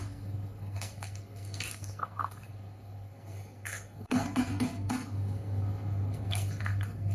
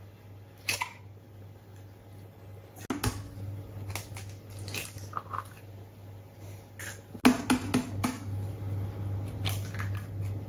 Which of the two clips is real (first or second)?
second